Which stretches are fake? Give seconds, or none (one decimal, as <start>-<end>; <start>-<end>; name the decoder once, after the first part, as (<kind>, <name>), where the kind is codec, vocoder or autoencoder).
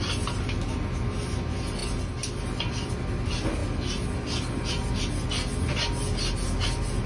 none